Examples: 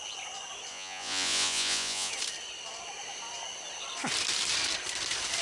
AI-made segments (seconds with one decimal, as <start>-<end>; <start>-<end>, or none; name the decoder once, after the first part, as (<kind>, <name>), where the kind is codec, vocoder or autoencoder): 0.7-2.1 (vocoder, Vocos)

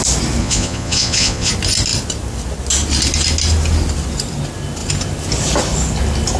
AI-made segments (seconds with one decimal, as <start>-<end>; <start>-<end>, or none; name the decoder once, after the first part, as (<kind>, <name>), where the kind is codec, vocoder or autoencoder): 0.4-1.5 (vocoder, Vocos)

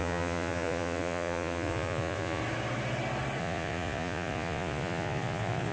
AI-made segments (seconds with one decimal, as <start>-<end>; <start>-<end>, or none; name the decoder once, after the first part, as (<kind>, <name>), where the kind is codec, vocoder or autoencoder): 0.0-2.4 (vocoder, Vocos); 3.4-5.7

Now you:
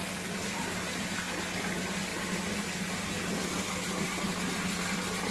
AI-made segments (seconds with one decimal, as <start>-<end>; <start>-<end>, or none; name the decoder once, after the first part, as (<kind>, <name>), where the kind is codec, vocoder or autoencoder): none

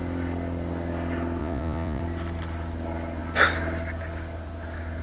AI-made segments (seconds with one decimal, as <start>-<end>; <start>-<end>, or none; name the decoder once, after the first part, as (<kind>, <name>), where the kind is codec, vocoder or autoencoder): 1.4-2.0 (vocoder, Vocos)

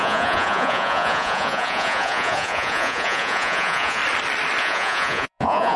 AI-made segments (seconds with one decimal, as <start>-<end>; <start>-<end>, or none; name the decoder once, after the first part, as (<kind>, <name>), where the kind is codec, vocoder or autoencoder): 0.0-4.0 (vocoder, Vocos); 4.6-5.8

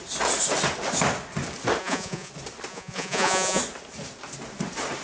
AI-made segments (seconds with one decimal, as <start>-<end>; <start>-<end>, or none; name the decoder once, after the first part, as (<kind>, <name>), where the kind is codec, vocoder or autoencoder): 1.8-2.3 (vocoder, Vocos); 2.7-3.6

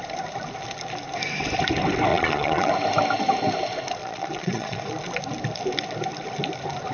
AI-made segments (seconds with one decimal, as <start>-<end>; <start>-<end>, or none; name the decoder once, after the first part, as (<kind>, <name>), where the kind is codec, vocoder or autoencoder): 2.1-2.7 (vocoder, Vocos); 4.0-4.8